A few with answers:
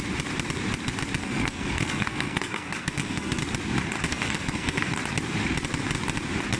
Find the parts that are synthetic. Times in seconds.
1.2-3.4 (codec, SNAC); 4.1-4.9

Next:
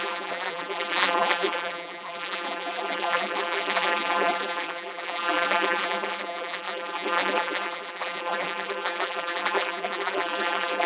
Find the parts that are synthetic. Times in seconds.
0.0-10.9 (vocoder, BigVGAN v2)

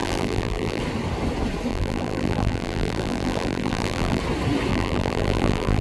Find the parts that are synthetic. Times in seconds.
0.0-0.8 (vocoder, BigVGAN v2); 1.7-4.2; 4.7-5.8

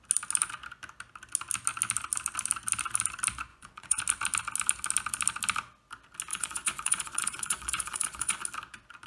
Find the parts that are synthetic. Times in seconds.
3.5-4.0 (vocoder, Vocos); 6.3-8.4